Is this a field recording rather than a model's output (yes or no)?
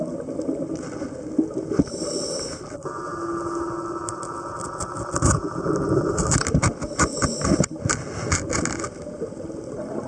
yes